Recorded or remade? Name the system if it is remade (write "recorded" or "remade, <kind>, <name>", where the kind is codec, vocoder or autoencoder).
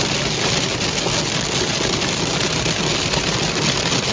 recorded